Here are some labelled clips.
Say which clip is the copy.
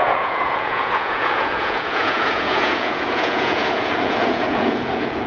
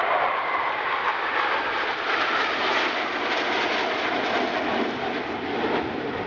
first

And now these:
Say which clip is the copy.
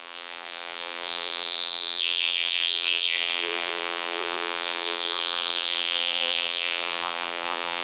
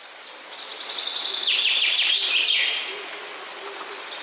first